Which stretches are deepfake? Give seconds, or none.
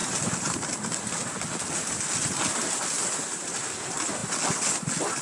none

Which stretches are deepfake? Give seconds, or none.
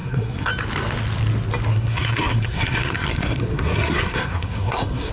0.0-0.5 (codec, SNAC); 1.7-5.1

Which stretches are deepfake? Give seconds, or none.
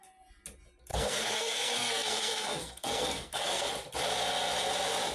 0.9-3.7 (codec, SNAC)